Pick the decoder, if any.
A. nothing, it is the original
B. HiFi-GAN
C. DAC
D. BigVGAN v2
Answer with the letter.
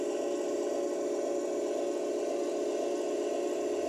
A